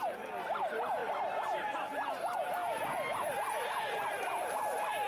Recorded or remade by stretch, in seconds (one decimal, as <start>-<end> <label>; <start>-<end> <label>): 0.0-5.1 recorded